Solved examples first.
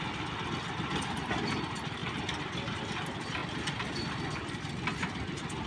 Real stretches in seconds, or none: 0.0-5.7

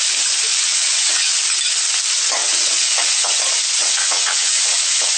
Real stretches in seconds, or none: 0.0-0.5; 1.3-2.4; 3.4-3.8

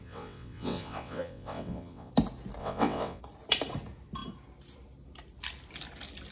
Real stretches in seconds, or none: 2.1-2.6; 3.2-6.3

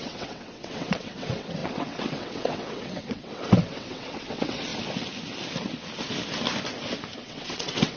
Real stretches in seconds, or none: 4.7-7.2

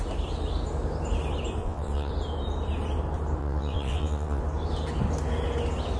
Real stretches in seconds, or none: 0.0-1.6; 2.1-3.4; 4.4-6.0

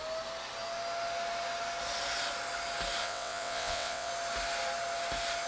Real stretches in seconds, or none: 0.0-3.0; 4.1-5.5

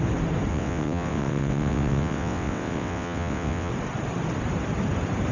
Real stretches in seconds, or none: 0.0-0.5; 3.7-5.3